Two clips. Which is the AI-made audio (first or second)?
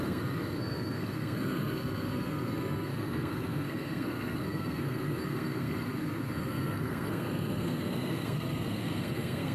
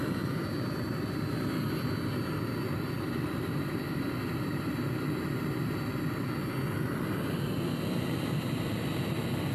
first